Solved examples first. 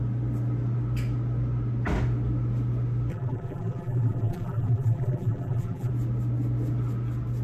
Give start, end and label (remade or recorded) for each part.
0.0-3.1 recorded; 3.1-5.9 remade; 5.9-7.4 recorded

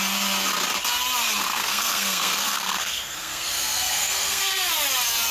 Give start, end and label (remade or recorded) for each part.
0.0-1.5 recorded; 1.5-4.7 remade; 4.7-5.3 recorded

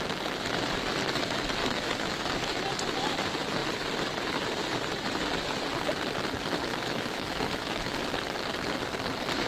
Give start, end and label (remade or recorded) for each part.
0.0-1.6 recorded; 1.6-2.6 remade; 2.6-6.7 recorded; 6.7-8.0 remade; 8.0-9.5 recorded

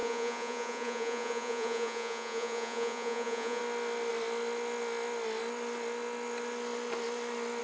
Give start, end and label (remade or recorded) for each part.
0.0-3.6 remade; 3.6-7.6 recorded

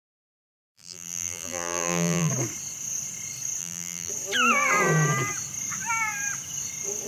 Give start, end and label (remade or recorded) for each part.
0.0-2.3 remade; 2.3-3.6 recorded; 3.6-4.1 remade; 4.1-7.1 recorded

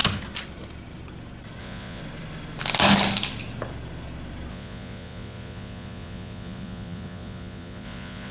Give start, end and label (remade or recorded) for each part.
0.0-1.6 recorded; 1.6-2.0 remade; 2.0-4.5 recorded; 4.5-8.3 remade

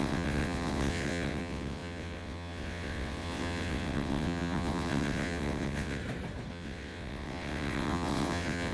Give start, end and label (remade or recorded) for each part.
0.0-6.0 remade; 6.0-6.5 recorded; 6.5-8.7 remade

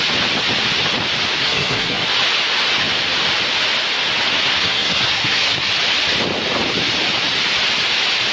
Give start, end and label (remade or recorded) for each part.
0.0-1.4 recorded; 1.4-2.0 remade; 2.0-4.3 recorded; 4.3-5.7 remade; 5.7-8.3 recorded